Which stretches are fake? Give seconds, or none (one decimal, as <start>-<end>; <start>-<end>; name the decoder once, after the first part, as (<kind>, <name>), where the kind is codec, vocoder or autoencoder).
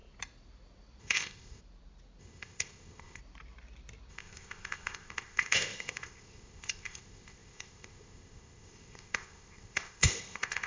1.0-1.6 (codec, ZipCodec); 2.2-3.2; 4.1-10.7